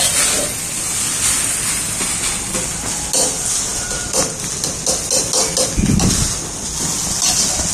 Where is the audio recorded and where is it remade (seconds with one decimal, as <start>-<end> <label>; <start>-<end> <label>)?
0.0-7.7 recorded